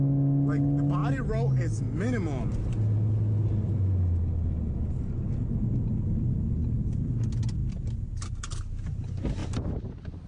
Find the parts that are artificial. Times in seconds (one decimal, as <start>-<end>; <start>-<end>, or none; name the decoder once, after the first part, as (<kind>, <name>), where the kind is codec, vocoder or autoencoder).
9.4-9.9 (vocoder, BigVGAN v2)